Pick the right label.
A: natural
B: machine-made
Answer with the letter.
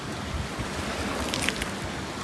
A